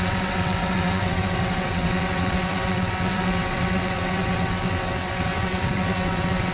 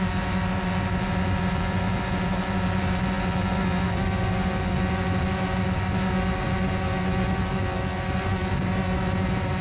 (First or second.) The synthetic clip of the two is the first